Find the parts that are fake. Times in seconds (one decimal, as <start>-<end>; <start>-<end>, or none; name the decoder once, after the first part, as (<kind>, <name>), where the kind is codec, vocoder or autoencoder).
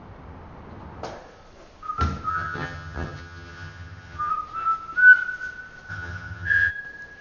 2.3-4.3 (vocoder, HiFi-GAN); 5.9-6.7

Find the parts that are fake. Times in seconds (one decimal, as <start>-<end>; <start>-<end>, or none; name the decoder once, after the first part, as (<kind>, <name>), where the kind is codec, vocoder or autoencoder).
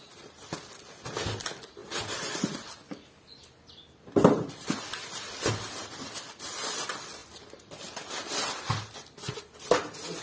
none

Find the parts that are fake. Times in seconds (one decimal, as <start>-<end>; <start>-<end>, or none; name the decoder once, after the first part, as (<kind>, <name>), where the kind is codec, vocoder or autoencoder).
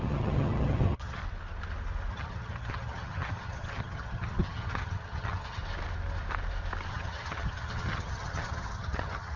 0.0-1.2 (vocoder, HiFi-GAN); 2.1-5.6; 6.9-9.4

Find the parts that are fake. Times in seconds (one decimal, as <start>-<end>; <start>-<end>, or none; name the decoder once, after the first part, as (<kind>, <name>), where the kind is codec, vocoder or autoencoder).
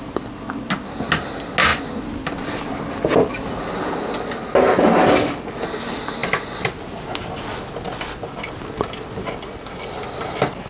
none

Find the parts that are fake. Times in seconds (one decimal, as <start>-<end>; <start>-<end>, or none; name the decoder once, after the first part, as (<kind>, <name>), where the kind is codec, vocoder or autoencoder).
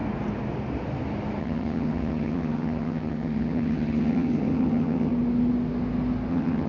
1.4-5.1 (vocoder, HiFi-GAN); 6.3-6.7